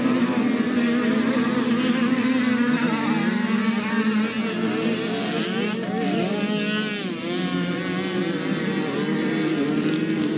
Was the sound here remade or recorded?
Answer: recorded